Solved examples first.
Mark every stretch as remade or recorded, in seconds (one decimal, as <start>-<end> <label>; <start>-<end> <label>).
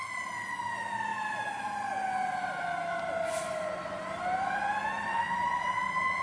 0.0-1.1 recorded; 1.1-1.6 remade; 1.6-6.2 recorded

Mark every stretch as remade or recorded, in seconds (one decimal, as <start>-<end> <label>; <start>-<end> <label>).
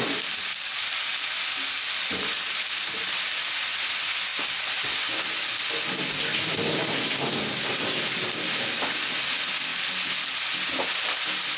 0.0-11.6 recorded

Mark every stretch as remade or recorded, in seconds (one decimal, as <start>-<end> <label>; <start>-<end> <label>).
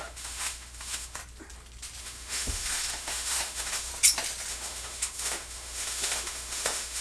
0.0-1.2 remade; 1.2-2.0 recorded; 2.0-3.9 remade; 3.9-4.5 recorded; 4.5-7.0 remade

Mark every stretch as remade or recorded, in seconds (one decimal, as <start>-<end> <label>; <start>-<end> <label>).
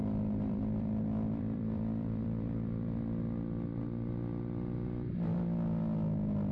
0.0-3.8 remade; 3.8-6.5 recorded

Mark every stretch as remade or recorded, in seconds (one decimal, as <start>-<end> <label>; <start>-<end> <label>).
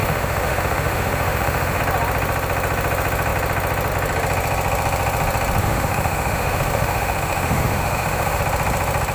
0.0-1.8 remade; 1.8-5.6 recorded; 5.6-8.4 remade; 8.4-9.1 recorded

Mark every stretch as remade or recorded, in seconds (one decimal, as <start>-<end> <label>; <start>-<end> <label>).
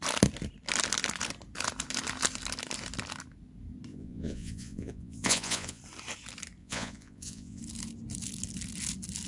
0.0-3.9 recorded; 3.9-5.8 remade; 5.8-6.6 recorded; 6.6-7.6 remade; 7.6-9.3 recorded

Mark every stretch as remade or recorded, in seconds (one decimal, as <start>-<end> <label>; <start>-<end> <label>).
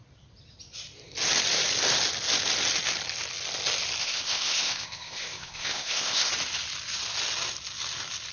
0.0-4.0 recorded; 4.0-6.3 remade; 6.3-8.3 recorded